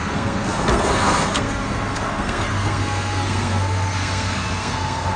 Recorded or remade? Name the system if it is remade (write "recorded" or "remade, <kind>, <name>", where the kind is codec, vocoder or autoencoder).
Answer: remade, codec, SNAC